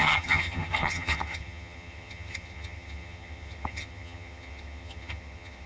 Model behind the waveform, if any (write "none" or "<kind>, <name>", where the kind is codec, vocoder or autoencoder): vocoder, HiFi-GAN